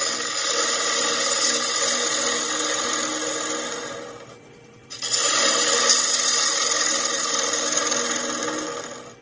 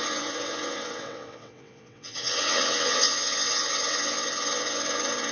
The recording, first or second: first